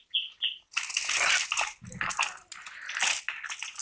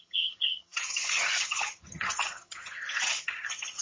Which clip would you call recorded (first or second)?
first